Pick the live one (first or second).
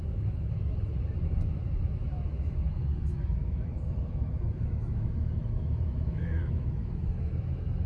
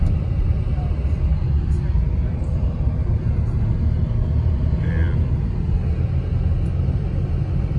second